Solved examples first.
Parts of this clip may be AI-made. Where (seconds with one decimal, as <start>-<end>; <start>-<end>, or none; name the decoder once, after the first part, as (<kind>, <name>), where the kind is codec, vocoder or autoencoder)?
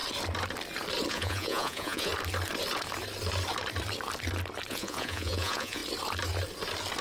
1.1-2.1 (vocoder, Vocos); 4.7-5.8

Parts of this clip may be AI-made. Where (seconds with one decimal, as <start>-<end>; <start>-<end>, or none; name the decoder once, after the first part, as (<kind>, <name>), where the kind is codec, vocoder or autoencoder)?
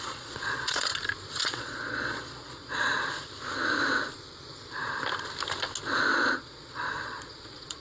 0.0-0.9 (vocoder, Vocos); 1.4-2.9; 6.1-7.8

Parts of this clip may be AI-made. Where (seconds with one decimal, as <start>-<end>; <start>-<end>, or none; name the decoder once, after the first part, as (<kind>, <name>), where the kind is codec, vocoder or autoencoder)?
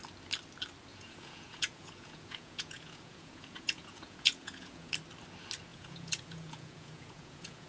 0.9-4.9 (vocoder, Vocos); 5.7-7.7